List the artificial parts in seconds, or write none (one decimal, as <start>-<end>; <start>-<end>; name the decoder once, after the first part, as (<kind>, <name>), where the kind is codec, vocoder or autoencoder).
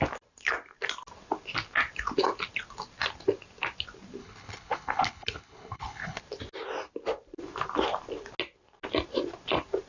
4.2-6.2 (codec, HILCodec)